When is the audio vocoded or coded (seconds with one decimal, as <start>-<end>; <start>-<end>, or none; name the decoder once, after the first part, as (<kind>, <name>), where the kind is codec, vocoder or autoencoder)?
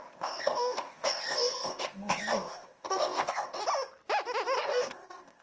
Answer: 0.0-3.6 (codec, ZipCodec); 4.6-5.4